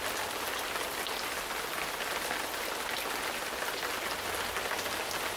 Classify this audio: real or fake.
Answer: real